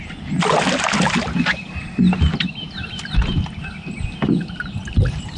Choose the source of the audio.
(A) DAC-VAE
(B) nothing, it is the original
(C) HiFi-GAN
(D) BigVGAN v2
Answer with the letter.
B